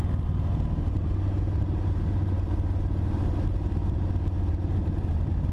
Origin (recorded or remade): recorded